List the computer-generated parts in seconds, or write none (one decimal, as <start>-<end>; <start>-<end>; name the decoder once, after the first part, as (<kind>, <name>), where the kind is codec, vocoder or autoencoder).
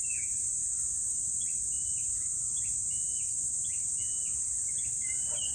0.0-0.6 (vocoder, BigVGAN v2); 1.2-2.3; 3.4-4.0; 4.8-5.5